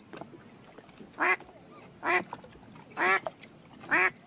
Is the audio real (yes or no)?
yes